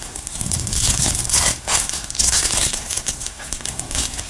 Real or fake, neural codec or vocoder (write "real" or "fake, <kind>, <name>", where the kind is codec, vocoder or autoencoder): fake, codec, SNAC